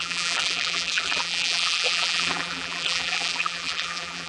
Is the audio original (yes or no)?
no